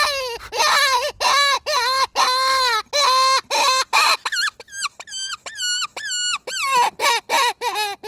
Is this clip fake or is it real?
real